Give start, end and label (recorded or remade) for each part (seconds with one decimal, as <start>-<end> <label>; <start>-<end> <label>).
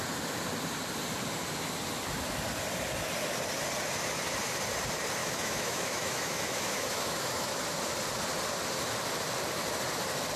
0.0-5.2 recorded; 5.2-7.6 remade; 7.6-10.4 recorded